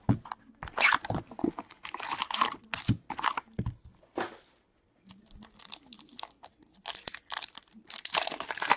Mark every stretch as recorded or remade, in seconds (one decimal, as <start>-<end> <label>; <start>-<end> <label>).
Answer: 0.0-8.8 recorded